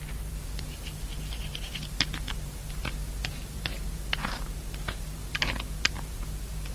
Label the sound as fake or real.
fake